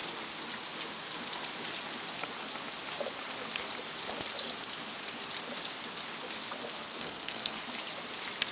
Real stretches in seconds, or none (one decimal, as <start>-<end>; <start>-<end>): 0.0-6.9; 7.6-8.5